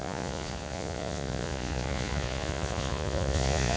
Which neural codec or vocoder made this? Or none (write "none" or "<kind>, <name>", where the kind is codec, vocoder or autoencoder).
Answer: vocoder, Vocos